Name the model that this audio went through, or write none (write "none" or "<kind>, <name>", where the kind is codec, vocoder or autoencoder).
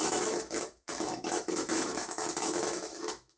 autoencoder, DAC-VAE